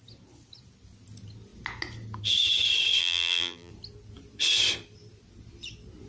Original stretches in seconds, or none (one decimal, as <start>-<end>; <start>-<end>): 0.0-3.0; 3.7-6.1